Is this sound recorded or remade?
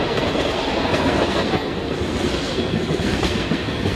remade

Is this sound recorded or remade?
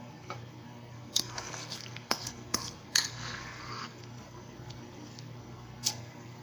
remade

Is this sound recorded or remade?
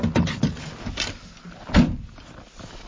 recorded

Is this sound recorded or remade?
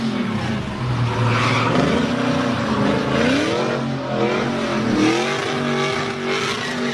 recorded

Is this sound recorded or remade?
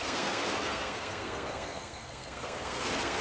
remade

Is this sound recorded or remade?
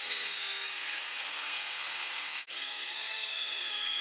remade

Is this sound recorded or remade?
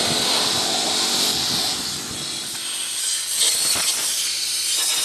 recorded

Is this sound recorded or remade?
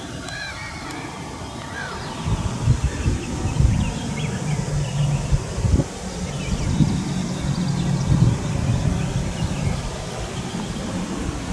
recorded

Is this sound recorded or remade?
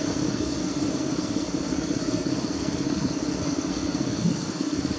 remade